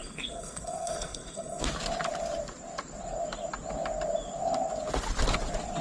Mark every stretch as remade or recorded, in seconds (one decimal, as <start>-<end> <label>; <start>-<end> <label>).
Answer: 0.0-1.6 remade; 1.6-5.8 recorded